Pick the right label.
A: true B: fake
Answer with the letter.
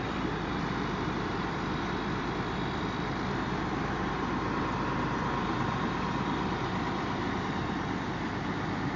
B